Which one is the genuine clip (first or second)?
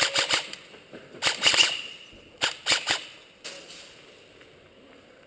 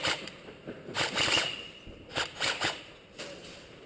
first